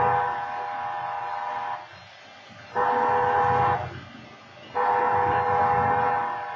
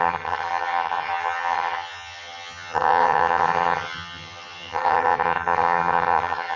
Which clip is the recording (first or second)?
first